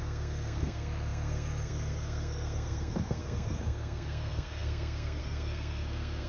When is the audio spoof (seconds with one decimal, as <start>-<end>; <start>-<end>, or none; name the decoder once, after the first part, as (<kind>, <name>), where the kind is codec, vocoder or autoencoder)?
0.0-6.3 (codec, SNAC)